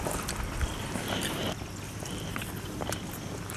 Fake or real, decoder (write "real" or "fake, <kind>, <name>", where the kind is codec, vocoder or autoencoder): real